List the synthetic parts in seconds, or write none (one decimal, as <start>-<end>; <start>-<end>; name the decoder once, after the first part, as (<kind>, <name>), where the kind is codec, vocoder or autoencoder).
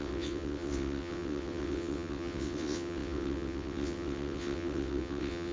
0.0-5.5 (vocoder, WaveNeXt)